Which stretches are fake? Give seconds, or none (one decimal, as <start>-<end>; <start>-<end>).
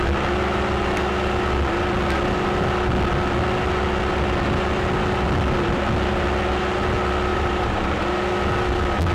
7.3-8.0